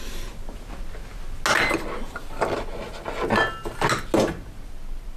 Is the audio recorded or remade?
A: recorded